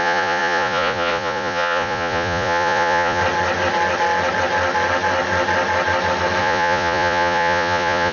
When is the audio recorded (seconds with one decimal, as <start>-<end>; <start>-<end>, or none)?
3.2-6.4

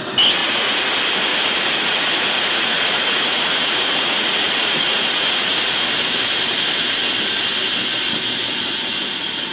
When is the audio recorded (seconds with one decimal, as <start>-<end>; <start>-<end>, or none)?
0.0-0.4; 0.9-1.3; 5.9-9.5

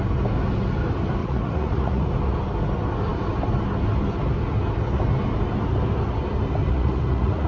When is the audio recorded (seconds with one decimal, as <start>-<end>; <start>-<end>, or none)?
0.0-1.2; 2.1-6.6

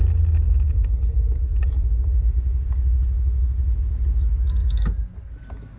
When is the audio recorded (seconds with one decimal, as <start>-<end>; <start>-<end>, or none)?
0.0-1.5; 2.1-5.8

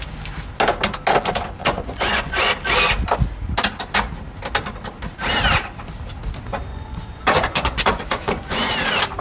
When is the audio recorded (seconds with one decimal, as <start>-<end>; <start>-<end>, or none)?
0.0-1.6; 2.5-6.7; 8.7-9.2

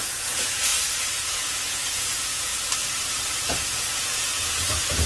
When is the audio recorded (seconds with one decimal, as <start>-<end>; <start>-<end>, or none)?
0.7-1.3; 2.5-3.4

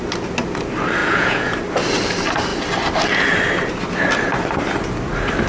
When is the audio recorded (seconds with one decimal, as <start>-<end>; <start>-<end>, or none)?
0.0-1.0; 1.5-5.5

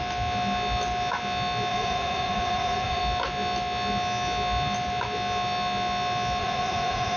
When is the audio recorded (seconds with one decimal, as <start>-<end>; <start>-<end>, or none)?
0.0-1.7; 3.0-6.4